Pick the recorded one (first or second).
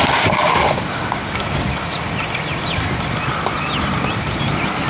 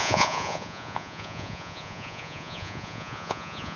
first